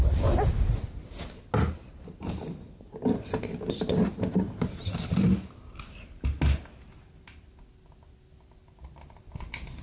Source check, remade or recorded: recorded